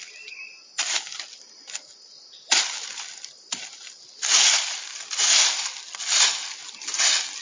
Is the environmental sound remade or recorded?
recorded